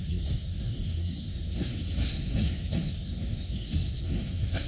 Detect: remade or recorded remade